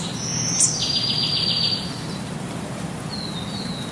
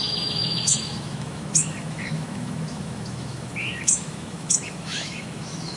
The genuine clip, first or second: first